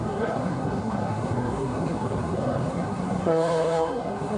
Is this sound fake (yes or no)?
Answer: yes